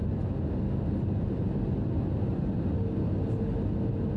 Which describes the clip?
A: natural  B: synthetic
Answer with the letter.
A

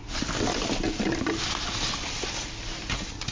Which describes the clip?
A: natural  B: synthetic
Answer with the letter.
A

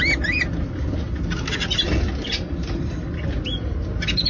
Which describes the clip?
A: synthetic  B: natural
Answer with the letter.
B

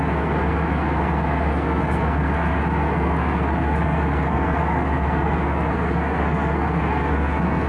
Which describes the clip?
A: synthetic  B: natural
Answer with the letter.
A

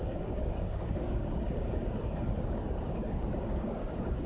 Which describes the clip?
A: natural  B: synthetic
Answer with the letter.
B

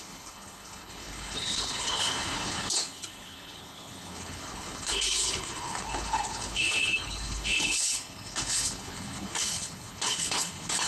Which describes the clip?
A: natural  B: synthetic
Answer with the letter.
B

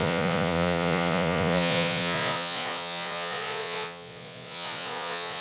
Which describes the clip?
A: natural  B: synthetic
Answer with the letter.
B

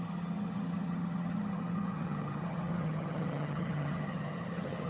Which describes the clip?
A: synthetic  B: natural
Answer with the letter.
A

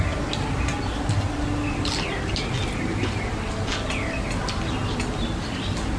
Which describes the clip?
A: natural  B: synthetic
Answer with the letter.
A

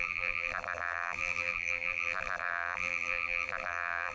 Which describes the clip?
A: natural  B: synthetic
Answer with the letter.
B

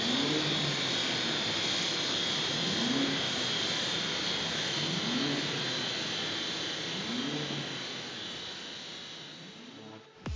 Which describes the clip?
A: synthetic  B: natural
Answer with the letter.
B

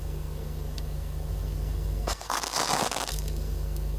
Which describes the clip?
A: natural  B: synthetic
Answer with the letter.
B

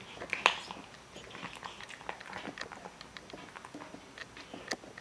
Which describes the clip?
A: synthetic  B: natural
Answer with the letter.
B